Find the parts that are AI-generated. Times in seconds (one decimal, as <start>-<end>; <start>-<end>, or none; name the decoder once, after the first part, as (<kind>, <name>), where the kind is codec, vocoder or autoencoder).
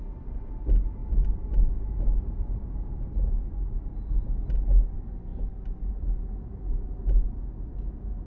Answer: none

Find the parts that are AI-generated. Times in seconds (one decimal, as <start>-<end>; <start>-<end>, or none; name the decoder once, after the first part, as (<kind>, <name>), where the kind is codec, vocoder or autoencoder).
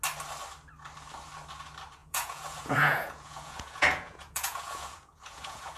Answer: 2.0-5.8 (vocoder, Vocos)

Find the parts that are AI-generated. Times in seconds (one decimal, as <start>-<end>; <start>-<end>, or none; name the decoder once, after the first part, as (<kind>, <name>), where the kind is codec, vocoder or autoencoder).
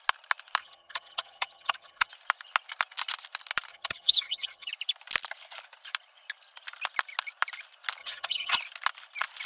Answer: 0.6-2.1 (vocoder, HiFi-GAN); 3.7-4.7; 8.0-8.6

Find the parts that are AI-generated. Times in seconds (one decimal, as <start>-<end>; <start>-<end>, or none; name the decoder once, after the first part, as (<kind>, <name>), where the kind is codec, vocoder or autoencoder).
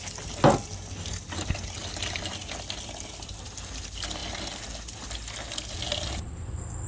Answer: none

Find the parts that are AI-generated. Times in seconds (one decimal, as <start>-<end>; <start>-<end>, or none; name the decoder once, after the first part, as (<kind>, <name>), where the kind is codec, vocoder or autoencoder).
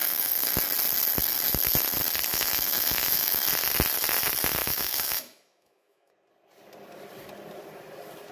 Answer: 0.0-0.5 (autoencoder, DAC-VAE); 2.3-3.4; 4.6-6.1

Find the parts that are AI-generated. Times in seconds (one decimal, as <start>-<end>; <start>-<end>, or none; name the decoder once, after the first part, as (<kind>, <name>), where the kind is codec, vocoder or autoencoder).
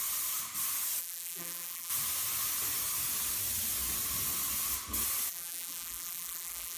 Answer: 1.0-1.9 (vocoder, BigVGAN v2); 5.3-6.8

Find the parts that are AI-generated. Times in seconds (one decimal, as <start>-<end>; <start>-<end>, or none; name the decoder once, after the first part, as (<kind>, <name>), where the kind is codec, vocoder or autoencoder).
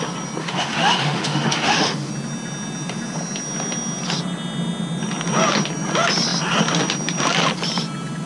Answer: 0.4-2.1 (autoencoder, DAC-VAE)